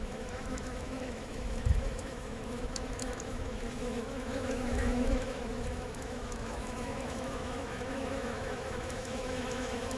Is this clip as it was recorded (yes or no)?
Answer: no